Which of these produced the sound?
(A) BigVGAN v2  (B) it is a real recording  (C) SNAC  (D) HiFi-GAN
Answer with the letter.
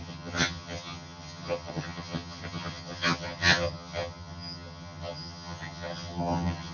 D